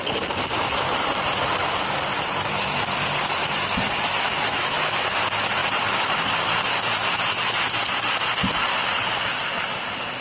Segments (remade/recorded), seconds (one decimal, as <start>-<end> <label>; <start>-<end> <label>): 0.0-4.3 recorded; 4.3-5.1 remade; 5.1-10.2 recorded